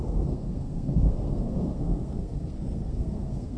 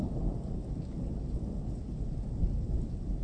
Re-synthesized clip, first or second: first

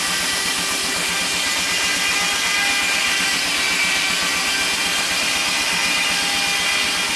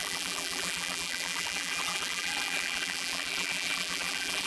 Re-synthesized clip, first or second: second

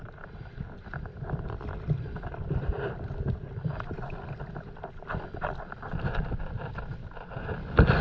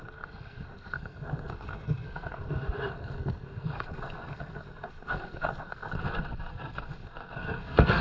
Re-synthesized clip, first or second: second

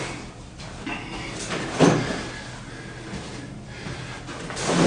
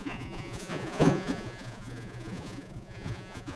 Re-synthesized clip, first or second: second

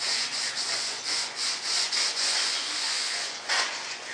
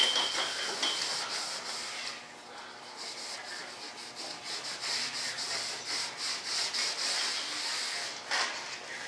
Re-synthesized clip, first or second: first